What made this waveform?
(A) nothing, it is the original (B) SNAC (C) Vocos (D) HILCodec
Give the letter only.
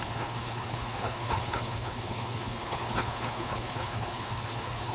D